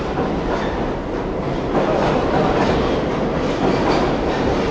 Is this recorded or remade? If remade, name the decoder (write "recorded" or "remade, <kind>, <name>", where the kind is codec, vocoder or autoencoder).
recorded